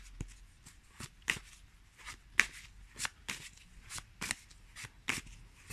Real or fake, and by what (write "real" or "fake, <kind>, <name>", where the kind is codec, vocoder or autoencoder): real